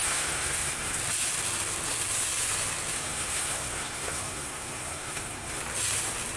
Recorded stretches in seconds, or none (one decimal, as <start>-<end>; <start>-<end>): 1.0-2.9; 5.6-6.4

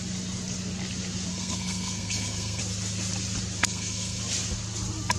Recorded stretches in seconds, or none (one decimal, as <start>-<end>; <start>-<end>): 0.0-1.3; 2.6-3.6; 4.2-5.2

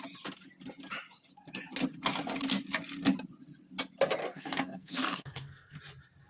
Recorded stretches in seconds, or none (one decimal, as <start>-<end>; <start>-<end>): 0.0-4.2; 5.8-6.3